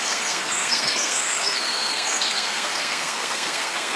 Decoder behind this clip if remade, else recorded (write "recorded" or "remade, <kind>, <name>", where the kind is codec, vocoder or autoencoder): remade, codec, SNAC